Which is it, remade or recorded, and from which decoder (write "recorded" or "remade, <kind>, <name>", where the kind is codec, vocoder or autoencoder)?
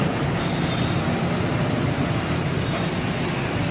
recorded